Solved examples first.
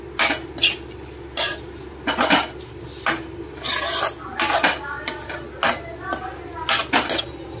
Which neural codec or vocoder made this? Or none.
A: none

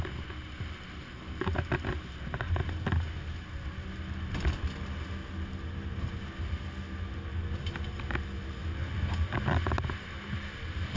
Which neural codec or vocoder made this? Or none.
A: none